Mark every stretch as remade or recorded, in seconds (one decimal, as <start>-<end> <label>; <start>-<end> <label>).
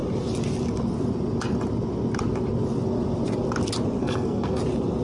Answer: 0.0-4.0 recorded; 4.0-4.6 remade; 4.6-5.0 recorded